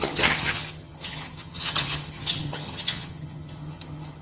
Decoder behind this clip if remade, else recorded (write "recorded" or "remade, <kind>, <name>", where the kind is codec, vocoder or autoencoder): remade, vocoder, HiFi-GAN